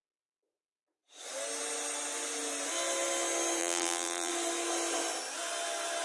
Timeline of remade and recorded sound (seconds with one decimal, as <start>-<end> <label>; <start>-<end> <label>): 0.0-3.6 recorded; 3.6-4.3 remade; 4.3-6.0 recorded